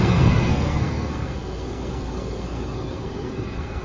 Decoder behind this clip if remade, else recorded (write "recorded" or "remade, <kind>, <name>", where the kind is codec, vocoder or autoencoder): remade, codec, SNAC